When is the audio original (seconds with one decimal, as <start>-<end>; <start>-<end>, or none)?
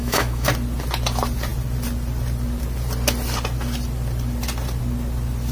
0.5-5.5